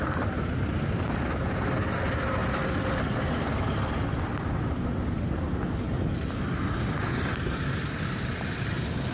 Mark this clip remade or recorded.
recorded